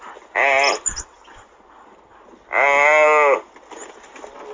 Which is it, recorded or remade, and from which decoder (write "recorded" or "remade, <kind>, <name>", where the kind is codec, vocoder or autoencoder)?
recorded